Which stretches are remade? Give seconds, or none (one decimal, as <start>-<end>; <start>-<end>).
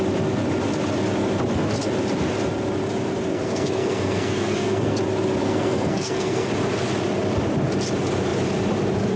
3.3-5.0; 5.4-6.5